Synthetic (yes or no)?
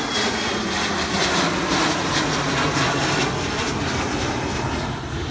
no